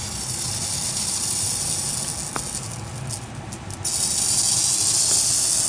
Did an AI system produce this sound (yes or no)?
no